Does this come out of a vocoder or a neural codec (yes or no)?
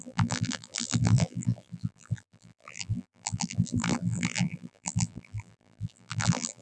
yes